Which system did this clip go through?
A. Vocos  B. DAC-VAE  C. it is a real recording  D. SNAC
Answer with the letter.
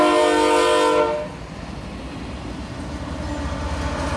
C